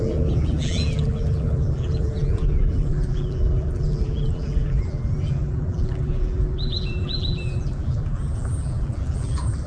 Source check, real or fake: fake